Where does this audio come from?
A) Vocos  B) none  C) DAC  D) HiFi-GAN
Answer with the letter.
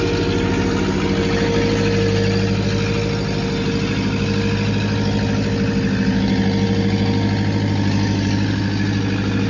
B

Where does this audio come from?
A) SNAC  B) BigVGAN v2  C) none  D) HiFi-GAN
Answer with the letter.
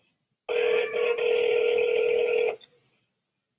C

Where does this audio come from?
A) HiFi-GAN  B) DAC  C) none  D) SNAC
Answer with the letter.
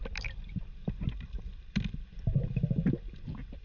C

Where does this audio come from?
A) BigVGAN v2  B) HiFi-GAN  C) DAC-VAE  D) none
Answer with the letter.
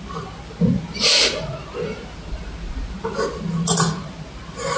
D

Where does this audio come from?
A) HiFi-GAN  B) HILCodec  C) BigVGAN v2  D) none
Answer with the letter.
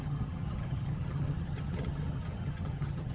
A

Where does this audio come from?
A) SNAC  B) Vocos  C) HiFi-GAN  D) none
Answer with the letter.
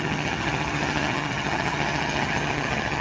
C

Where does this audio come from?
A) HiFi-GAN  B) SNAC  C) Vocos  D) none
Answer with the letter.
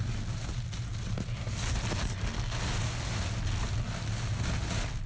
D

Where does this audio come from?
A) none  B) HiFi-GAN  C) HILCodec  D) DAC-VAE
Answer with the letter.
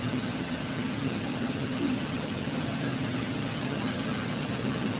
B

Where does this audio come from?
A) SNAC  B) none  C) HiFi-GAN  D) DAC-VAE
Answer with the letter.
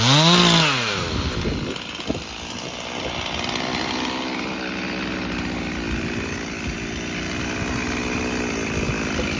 B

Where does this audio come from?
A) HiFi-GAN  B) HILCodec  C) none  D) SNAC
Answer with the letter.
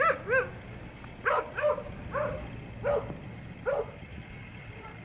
C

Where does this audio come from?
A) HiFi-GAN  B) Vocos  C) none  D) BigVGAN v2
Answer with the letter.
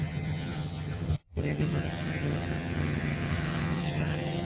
A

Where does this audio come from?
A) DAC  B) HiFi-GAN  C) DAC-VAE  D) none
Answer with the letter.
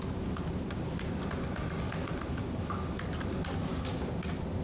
D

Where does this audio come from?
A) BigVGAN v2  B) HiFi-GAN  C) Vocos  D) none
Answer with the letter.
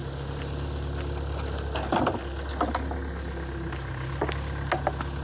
D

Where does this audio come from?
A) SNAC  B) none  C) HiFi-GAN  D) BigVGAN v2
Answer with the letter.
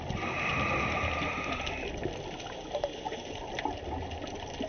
B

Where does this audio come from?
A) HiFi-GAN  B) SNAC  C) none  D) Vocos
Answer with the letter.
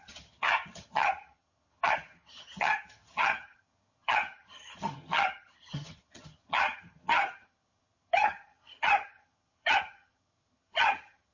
A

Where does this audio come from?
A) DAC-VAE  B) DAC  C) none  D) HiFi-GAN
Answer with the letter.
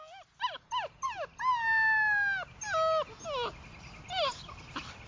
C